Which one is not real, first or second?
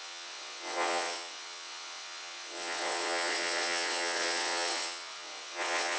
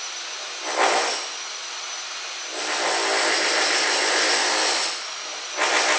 first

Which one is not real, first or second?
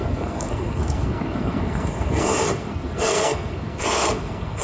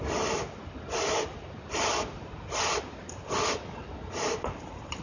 first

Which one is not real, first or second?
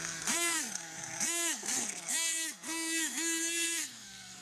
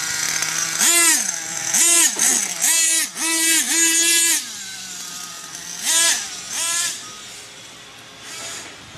first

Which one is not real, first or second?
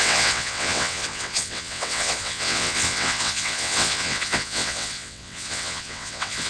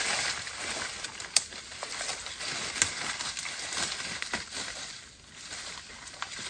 first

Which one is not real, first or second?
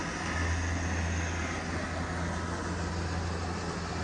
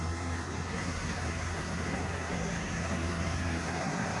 second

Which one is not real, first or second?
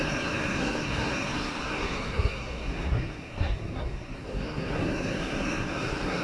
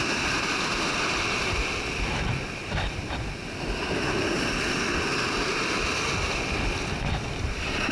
first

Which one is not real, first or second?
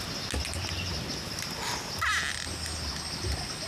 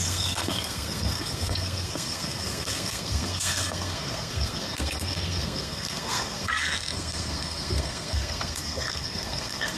second